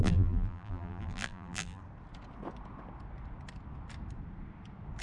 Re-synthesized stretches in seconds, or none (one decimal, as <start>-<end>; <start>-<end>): 0.0-1.8